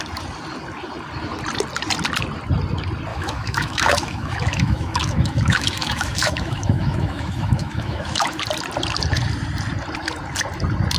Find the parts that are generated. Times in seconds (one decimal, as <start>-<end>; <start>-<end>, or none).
3.1-8.4